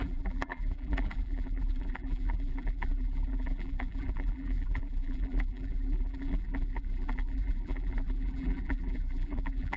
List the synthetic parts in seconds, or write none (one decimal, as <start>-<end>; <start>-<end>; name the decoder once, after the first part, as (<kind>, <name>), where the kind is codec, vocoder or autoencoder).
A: 0.0-9.8 (vocoder, BigVGAN v2)